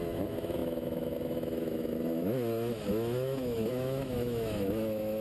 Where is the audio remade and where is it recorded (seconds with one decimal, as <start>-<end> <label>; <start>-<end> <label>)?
0.0-5.2 remade